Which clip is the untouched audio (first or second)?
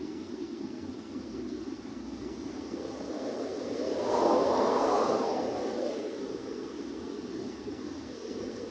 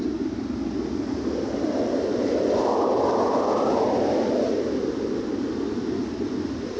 second